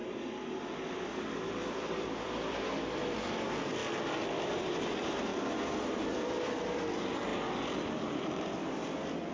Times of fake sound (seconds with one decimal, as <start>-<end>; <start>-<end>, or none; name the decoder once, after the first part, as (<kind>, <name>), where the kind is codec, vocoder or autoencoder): 0.6-9.3 (vocoder, BigVGAN v2)